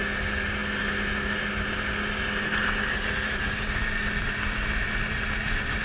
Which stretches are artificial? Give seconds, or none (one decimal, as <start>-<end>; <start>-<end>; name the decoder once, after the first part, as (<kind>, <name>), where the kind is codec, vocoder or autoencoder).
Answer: none